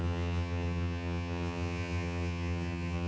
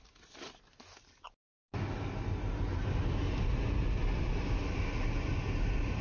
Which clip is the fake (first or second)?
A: first